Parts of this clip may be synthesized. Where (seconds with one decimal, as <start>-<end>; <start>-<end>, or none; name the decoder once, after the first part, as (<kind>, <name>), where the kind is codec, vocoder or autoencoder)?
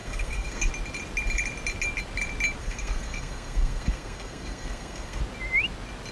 0.0-0.7 (codec, SNAC); 2.6-5.2